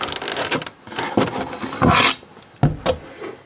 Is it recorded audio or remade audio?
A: recorded